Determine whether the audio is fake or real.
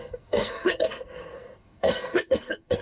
fake